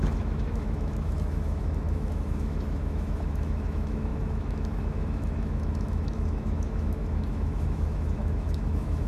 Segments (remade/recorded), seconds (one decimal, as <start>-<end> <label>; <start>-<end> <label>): 0.0-9.1 remade